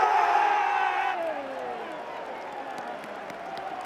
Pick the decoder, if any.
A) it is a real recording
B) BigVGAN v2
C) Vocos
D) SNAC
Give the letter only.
A